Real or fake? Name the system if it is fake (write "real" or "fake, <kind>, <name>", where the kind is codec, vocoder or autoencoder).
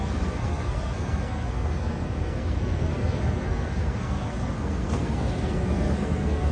fake, codec, SNAC